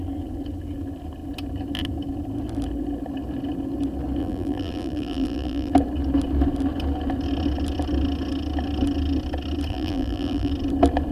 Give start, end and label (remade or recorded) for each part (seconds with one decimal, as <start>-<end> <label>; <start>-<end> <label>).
0.0-4.2 recorded; 4.2-5.7 remade; 5.7-9.7 recorded; 9.7-10.5 remade; 10.5-11.1 recorded